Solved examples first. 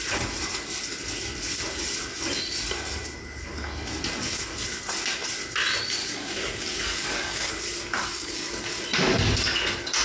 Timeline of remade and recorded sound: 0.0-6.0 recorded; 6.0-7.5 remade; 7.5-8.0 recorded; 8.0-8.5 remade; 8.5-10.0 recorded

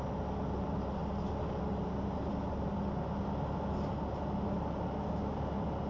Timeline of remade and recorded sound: 0.0-5.9 recorded

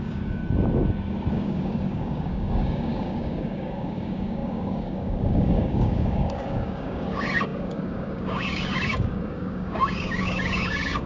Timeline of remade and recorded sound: 0.0-0.4 remade; 0.4-1.3 recorded; 1.3-11.1 remade

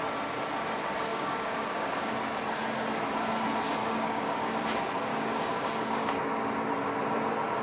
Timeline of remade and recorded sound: 0.0-1.1 recorded; 1.1-2.1 remade; 2.1-3.8 recorded; 3.8-4.6 remade; 4.6-5.1 recorded; 5.1-6.2 remade; 6.2-7.6 recorded

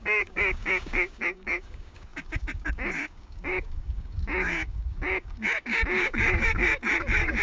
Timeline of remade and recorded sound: 0.0-7.4 remade